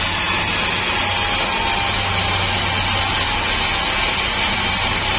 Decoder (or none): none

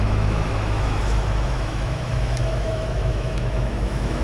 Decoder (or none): autoencoder, DAC-VAE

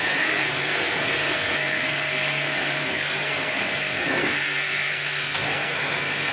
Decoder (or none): codec, SNAC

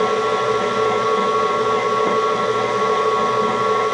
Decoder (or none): none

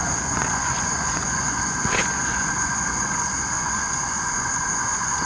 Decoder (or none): vocoder, Vocos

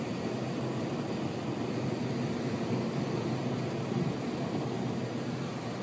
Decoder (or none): none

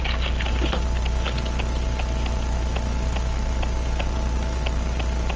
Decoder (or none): none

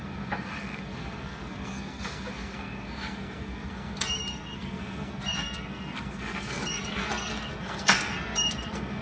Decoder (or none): codec, SNAC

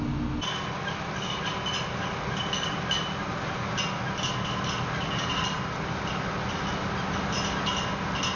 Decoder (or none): none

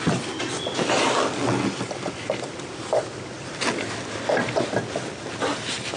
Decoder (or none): none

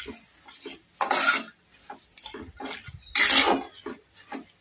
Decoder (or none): none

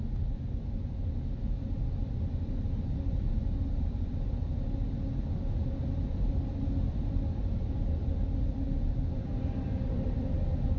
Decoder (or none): none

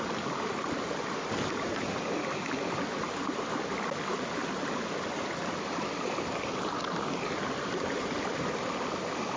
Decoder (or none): none